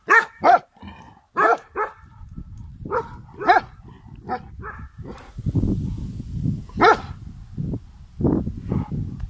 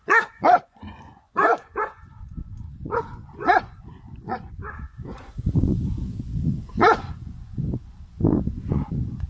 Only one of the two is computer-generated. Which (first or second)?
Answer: second